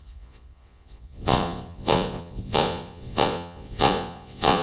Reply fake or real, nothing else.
fake